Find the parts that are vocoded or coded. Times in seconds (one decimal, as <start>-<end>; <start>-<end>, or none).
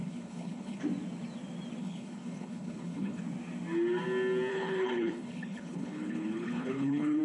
0.0-0.8; 1.8-3.2; 4.5-7.2